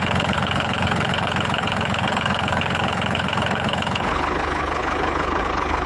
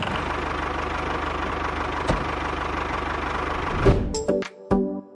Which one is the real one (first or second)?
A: second